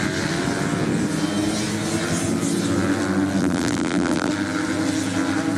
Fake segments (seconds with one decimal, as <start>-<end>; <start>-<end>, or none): 3.4-4.3